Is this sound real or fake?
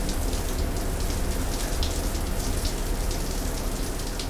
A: real